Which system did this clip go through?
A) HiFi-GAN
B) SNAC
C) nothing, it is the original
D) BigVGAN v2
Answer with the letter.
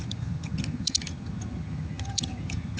A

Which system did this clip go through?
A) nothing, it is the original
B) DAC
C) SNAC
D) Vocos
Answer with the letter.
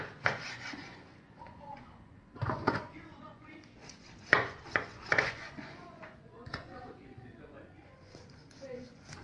D